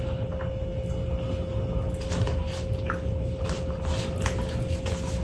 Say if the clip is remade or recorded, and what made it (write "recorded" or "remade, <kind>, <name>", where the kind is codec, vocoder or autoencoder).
recorded